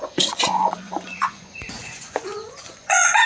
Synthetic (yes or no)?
yes